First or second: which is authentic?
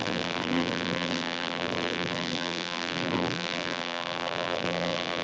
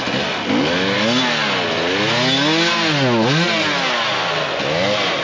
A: second